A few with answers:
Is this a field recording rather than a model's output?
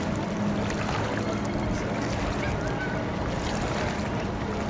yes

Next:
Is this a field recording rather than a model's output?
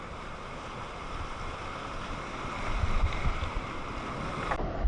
yes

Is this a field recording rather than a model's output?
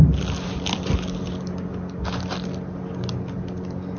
yes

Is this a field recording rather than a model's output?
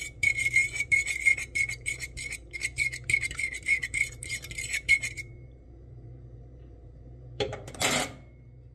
no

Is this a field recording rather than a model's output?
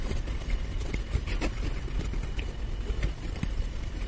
no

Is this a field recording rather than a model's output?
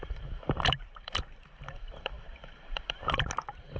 no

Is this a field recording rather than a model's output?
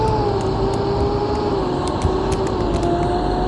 yes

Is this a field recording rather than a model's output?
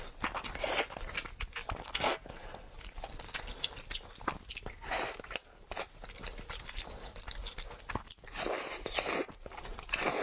yes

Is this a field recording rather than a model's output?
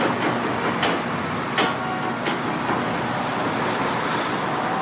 yes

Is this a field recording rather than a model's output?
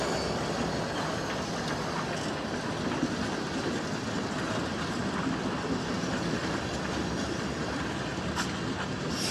yes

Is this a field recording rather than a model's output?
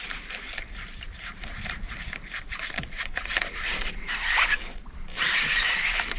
no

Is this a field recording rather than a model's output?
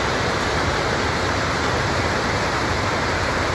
no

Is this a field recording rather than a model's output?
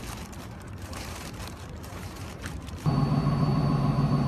no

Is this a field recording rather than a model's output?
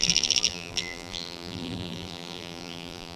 no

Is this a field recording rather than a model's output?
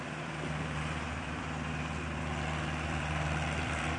no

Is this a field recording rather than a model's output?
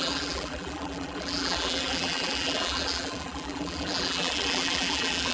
no